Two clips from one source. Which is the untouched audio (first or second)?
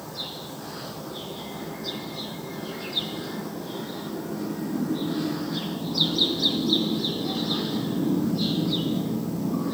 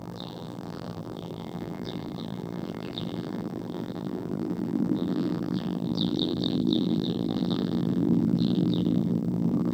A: first